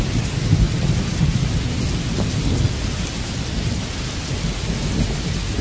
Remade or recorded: recorded